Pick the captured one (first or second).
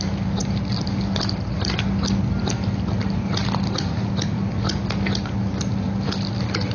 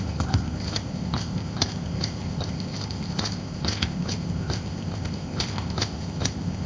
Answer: first